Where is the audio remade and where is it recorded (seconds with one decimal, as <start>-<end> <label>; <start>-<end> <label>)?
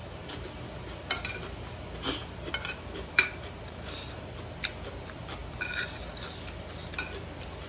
0.0-1.3 remade; 1.3-2.2 recorded; 2.2-4.3 remade; 4.3-5.4 recorded; 5.4-6.0 remade; 6.0-7.7 recorded